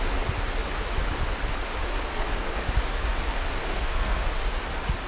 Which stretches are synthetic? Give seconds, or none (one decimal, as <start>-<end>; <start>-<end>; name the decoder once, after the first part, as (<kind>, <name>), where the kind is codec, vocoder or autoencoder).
2.1-2.6 (codec, SNAC); 3.5-4.3